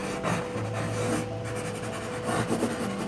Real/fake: real